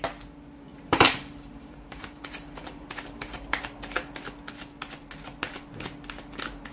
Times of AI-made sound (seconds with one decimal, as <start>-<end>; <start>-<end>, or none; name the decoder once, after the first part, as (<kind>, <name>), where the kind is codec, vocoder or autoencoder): 0.7-3.6 (vocoder, BigVGAN v2)